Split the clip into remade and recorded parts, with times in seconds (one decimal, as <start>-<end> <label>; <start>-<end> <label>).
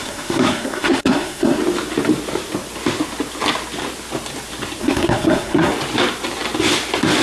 0.0-1.6 remade; 1.6-4.8 recorded; 4.8-5.7 remade; 5.7-7.2 recorded